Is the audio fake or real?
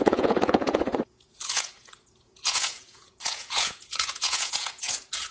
fake